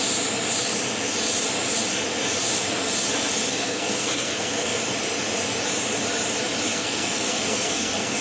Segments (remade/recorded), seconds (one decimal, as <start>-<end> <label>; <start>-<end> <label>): 0.0-3.5 recorded; 3.5-4.8 remade; 4.8-6.7 recorded; 6.7-8.2 remade